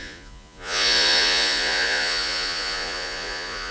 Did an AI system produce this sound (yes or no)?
yes